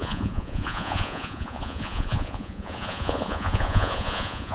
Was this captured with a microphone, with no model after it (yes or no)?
no